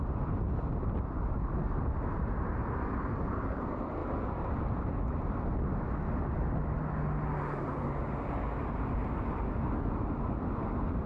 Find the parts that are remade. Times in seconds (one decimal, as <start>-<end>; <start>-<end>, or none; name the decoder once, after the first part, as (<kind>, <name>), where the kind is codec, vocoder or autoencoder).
none